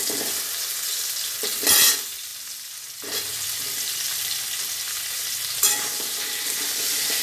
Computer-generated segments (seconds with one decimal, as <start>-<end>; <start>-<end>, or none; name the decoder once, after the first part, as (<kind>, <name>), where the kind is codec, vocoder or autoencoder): none